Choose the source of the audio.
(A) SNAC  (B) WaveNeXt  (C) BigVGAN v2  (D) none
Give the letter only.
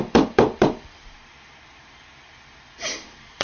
C